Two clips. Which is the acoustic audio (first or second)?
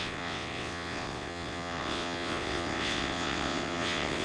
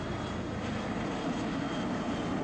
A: second